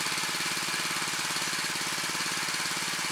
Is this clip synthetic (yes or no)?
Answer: no